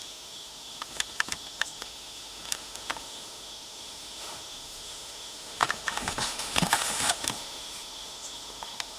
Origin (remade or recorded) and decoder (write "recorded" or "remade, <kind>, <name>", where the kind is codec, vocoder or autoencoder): remade, autoencoder, DAC-VAE